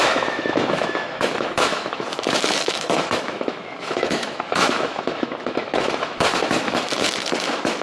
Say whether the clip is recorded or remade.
remade